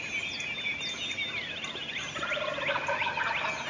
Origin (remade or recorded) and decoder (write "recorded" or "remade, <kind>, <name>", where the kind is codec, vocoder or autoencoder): recorded